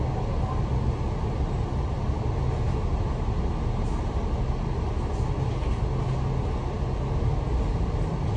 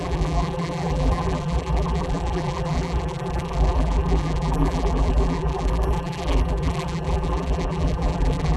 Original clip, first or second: first